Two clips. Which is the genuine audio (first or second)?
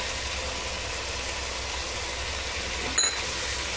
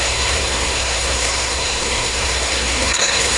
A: first